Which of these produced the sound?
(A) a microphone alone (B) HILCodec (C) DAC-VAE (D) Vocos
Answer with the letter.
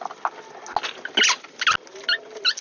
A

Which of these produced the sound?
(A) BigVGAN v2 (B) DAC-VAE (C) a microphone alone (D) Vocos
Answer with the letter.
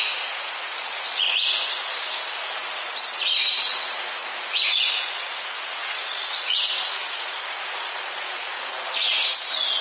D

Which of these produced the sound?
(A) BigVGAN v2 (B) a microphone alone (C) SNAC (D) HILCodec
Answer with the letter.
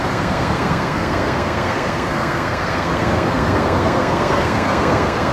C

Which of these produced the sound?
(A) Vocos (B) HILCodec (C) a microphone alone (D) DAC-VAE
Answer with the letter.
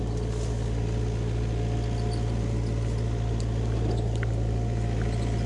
C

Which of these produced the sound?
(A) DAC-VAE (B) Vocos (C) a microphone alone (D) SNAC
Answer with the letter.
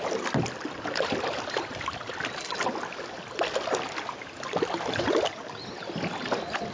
C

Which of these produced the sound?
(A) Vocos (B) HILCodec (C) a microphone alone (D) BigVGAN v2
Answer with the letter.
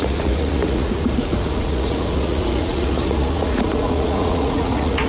A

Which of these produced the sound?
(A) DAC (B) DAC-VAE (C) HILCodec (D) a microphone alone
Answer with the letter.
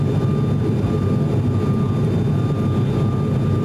D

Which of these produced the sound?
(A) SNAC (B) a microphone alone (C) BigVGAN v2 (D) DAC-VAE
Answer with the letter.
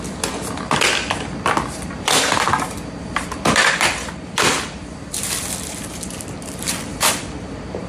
C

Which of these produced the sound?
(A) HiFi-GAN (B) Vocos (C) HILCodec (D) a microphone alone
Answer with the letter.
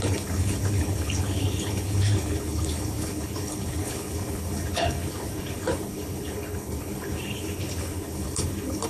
C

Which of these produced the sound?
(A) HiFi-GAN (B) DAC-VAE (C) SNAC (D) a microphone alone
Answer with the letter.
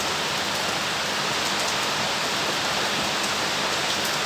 D